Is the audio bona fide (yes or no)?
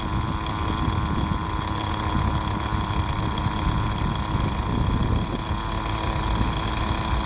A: yes